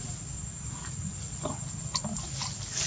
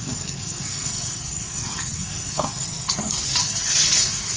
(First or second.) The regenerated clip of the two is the second